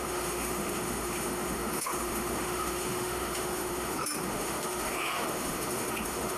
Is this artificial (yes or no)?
yes